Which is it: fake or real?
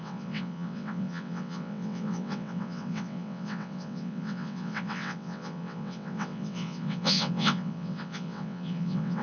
fake